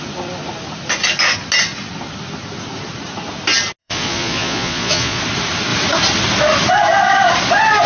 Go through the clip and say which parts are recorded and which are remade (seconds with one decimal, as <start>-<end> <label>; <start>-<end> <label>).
0.0-3.8 recorded; 3.8-5.2 remade; 5.2-7.9 recorded